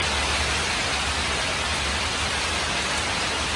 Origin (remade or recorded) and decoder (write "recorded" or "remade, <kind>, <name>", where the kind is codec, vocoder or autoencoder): recorded